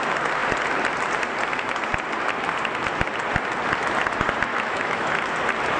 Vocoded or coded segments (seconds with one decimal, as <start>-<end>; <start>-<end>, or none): 4.5-5.1